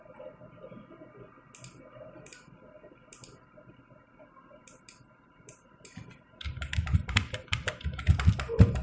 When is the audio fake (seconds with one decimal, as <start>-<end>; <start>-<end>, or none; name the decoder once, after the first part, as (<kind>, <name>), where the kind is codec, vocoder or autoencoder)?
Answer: 4.6-8.0 (vocoder, BigVGAN v2)